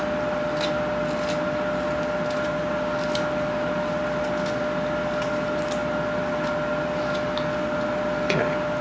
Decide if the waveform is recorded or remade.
recorded